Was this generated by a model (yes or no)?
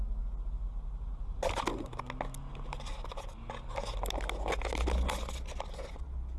no